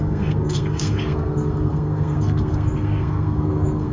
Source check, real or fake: fake